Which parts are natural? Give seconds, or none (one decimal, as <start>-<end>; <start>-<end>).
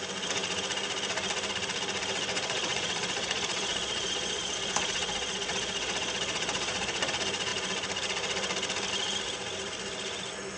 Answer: 0.0-2.3; 7.1-10.6